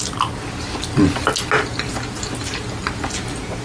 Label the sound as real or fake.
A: real